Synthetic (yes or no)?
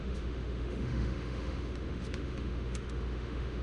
yes